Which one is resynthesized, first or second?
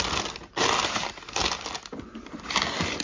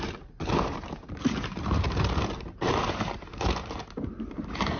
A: second